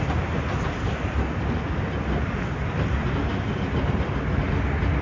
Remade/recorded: recorded